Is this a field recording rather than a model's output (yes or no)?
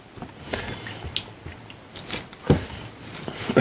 yes